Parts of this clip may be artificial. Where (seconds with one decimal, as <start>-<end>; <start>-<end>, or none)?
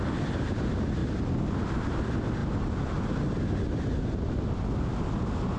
none